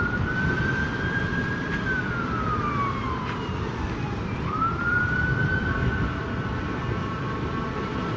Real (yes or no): no